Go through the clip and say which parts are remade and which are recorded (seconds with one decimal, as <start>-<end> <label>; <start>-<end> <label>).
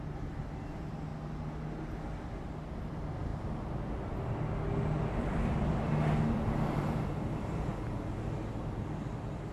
0.0-1.1 remade; 1.1-2.0 recorded; 2.0-3.3 remade; 3.3-5.1 recorded; 5.1-7.7 remade; 7.7-8.6 recorded; 8.6-9.5 remade